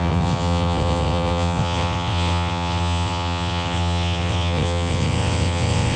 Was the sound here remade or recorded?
remade